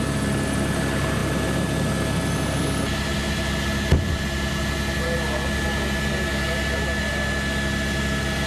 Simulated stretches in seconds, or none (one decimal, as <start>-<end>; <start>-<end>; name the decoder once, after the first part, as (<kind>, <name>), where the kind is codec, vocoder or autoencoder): none